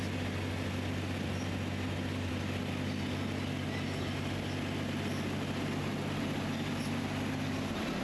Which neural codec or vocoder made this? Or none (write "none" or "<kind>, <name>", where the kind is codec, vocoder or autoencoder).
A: none